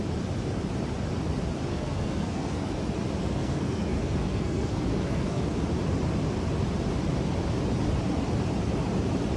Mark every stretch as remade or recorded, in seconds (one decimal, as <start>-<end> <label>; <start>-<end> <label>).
0.0-1.7 recorded; 1.7-2.7 remade; 2.7-3.2 recorded; 3.2-5.4 remade; 5.4-9.4 recorded